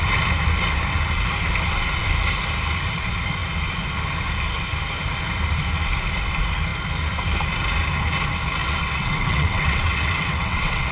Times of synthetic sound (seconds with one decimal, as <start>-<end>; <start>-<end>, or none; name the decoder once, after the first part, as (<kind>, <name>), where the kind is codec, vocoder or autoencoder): 8.6-10.9 (vocoder, WaveNeXt)